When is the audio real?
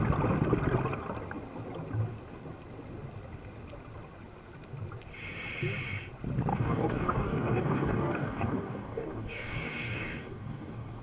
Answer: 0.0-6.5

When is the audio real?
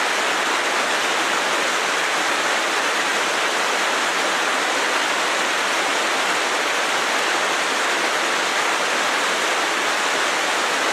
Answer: 0.0-10.9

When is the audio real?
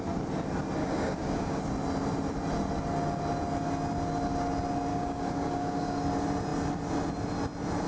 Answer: 0.0-0.8; 1.6-4.9; 6.1-7.9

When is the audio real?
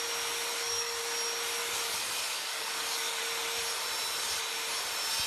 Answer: 0.0-0.5; 1.0-1.6; 3.2-5.3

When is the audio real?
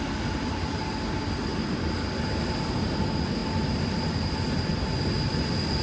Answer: 0.0-5.8